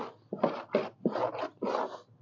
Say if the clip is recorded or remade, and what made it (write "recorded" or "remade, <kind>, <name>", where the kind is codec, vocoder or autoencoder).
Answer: recorded